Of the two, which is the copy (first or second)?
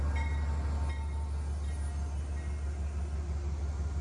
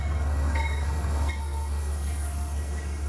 second